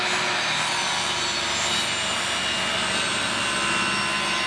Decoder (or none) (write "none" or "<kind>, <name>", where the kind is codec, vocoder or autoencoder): none